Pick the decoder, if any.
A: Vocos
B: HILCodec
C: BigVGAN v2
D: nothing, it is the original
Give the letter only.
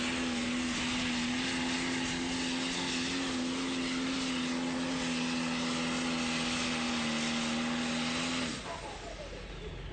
D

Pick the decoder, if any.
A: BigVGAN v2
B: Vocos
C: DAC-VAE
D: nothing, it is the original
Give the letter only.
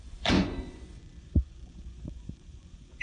B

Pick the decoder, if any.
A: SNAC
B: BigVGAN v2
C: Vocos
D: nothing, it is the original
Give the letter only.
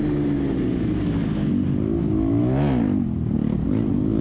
D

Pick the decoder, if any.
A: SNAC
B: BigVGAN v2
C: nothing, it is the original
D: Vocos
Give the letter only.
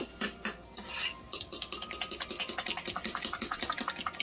C